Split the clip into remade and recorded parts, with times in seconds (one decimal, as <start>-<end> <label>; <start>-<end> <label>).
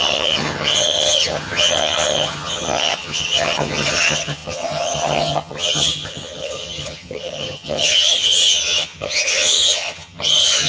0.0-10.7 remade